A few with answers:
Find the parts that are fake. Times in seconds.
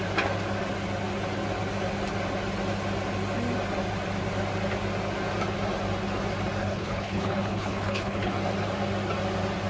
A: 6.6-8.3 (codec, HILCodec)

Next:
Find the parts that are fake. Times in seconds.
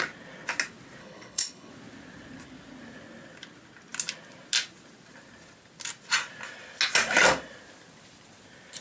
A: 1.0-1.7 (codec, HILCodec)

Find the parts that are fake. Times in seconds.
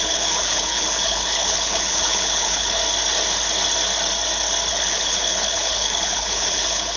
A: 0.0-2.8 (codec, HILCodec); 4.7-7.0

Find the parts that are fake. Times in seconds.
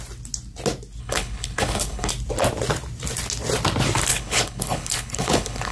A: 1.0-2.1 (codec, HILCodec); 4.1-5.7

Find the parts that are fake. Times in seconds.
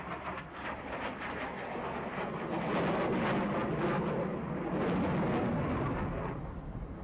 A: none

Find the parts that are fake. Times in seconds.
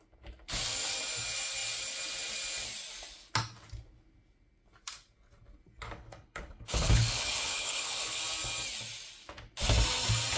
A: 6.0-8.2 (codec, HILCodec)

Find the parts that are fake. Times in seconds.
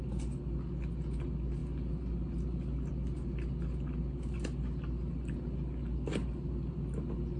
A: none